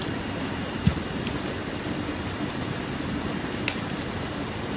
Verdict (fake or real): real